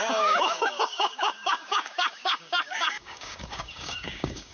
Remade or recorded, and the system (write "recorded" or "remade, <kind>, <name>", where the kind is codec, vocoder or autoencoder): remade, codec, DAC